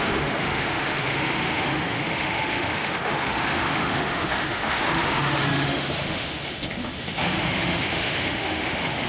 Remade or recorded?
remade